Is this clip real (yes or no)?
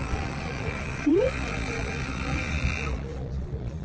no